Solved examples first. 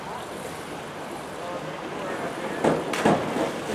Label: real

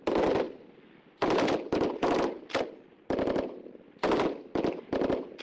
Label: real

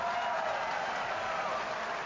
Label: real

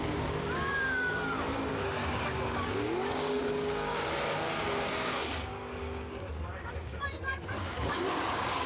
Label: fake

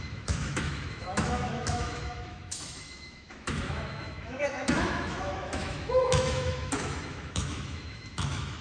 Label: fake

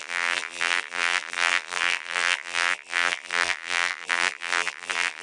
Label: fake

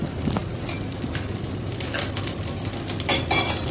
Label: real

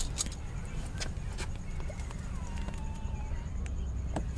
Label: real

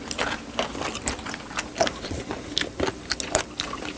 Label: real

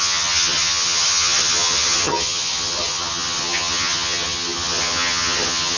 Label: fake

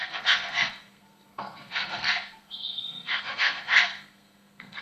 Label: fake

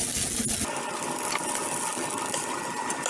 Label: real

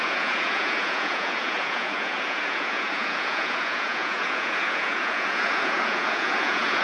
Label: fake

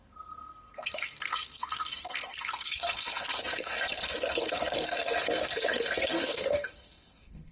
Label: fake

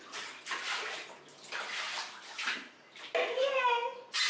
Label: real